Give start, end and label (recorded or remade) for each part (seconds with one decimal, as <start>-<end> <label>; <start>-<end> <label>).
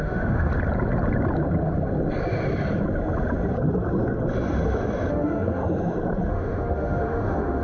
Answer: 0.0-0.5 remade; 0.5-5.1 recorded; 5.1-5.6 remade; 5.6-6.3 recorded; 6.3-7.6 remade